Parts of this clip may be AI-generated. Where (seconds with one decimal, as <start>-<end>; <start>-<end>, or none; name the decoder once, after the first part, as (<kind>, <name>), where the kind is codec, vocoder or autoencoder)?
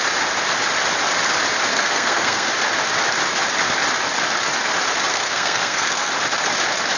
1.7-2.5 (codec, SNAC); 5.1-6.1